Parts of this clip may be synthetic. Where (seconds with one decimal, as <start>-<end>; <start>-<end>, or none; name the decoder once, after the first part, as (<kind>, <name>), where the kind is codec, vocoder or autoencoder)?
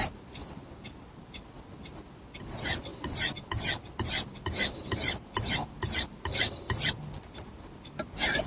none